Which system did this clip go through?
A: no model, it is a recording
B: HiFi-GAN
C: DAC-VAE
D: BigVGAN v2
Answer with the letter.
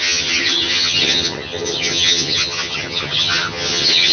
B